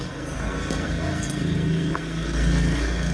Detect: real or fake fake